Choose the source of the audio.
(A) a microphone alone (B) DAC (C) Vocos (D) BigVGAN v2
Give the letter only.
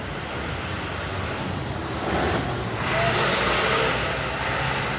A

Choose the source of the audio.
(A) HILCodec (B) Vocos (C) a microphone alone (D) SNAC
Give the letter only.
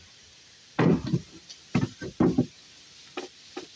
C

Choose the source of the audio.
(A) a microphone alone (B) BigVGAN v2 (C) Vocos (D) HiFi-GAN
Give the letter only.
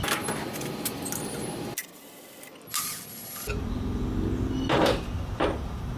A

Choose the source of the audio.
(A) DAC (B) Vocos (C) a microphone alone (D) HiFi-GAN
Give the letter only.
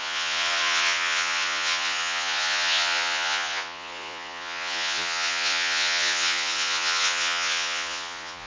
B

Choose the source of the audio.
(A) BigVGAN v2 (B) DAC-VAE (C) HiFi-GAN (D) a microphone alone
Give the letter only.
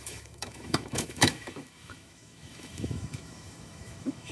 B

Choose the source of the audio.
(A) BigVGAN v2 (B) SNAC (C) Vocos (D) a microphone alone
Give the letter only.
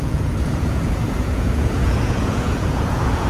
C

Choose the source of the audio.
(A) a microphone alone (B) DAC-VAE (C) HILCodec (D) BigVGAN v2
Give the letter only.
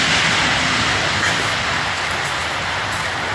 A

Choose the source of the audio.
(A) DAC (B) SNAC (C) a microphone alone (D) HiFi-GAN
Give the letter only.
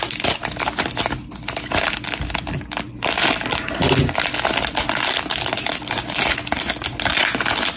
C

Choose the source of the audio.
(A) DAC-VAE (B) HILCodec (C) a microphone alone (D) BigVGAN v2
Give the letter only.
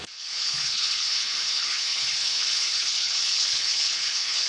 B